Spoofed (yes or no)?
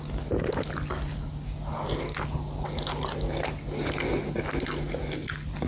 no